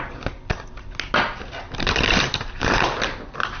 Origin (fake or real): real